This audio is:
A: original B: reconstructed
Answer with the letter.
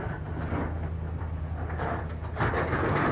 A